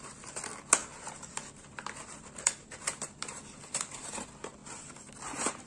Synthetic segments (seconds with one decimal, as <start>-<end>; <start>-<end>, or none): 0.8-4.1; 4.6-5.2

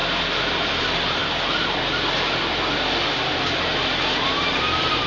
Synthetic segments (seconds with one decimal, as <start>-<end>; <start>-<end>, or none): 0.7-1.2; 4.3-5.1

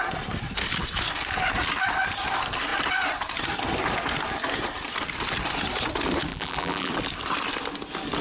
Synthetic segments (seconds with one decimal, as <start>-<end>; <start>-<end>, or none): 6.3-6.9

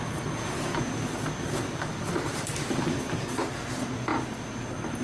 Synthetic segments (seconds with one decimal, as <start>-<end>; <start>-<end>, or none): 1.9-3.6